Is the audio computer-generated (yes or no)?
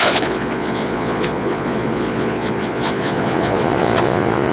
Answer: yes